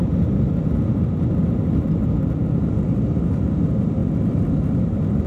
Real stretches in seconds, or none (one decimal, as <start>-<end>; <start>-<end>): 0.0-4.0; 4.7-5.3